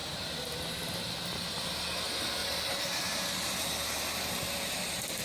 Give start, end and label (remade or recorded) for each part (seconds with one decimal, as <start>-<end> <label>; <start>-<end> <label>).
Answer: 0.0-1.1 remade; 1.1-2.4 recorded; 2.4-3.7 remade; 3.7-5.2 recorded